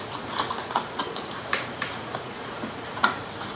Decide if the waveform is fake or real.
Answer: fake